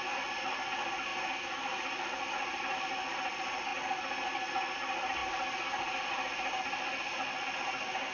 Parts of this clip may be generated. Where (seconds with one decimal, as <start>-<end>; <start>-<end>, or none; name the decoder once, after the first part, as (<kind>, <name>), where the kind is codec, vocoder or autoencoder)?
none